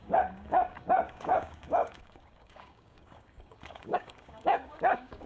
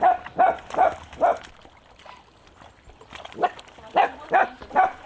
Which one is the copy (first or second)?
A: first